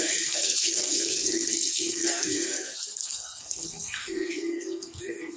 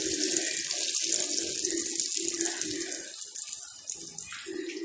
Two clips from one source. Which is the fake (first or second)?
first